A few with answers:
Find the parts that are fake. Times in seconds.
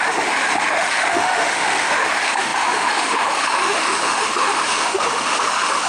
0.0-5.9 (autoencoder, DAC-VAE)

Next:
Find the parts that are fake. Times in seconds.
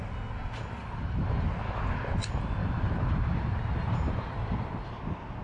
0.8-1.5 (vocoder, BigVGAN v2); 2.6-4.9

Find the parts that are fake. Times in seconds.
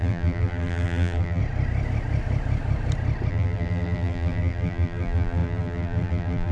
0.0-1.4 (vocoder, BigVGAN v2); 3.3-6.5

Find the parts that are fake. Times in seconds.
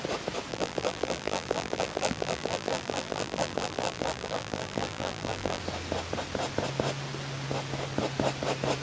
0.5-5.6 (vocoder, BigVGAN v2)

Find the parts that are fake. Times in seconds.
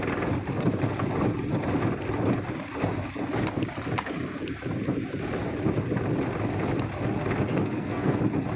7.5-8.2 (codec, SNAC)